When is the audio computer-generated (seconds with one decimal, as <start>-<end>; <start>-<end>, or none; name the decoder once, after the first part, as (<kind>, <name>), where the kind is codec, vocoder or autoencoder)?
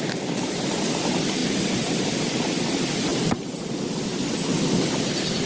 3.1-3.8 (vocoder, BigVGAN v2)